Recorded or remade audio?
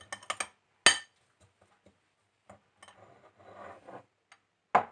recorded